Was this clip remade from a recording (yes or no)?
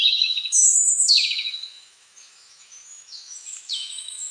yes